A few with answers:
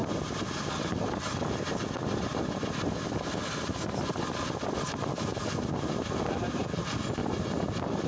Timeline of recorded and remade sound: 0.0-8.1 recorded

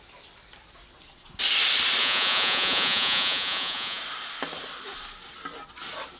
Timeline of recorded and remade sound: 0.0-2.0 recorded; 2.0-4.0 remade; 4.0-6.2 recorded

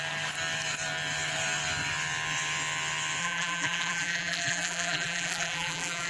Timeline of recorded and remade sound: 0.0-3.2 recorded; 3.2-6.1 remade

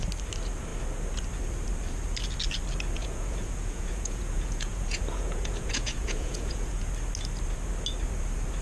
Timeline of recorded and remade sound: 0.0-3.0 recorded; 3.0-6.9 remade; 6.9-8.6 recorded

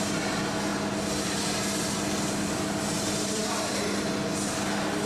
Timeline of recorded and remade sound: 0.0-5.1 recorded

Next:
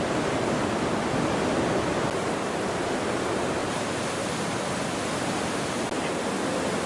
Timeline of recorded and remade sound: 0.0-3.6 recorded; 3.6-4.3 remade; 4.3-4.9 recorded; 4.9-5.7 remade; 5.7-6.9 recorded